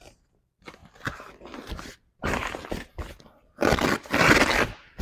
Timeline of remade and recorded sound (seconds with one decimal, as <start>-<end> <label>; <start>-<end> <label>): 0.0-5.0 recorded